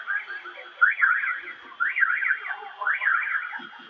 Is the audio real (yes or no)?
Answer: yes